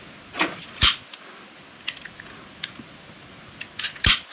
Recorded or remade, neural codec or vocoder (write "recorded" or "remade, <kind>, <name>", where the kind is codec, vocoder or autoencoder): recorded